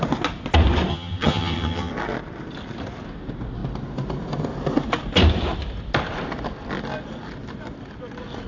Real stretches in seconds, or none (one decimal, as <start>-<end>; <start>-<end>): 0.0-0.9; 1.9-8.5